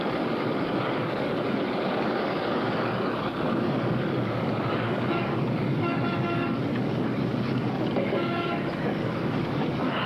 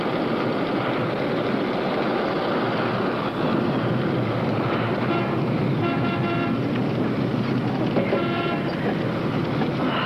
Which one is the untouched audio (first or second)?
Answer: second